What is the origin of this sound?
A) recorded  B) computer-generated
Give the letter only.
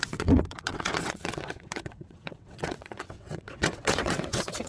B